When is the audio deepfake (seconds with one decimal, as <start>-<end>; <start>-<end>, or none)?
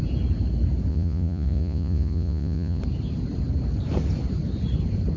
0.9-2.8